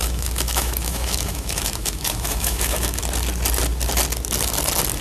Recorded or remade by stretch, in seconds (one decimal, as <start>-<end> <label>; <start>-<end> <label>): 0.0-3.0 remade; 3.0-5.0 recorded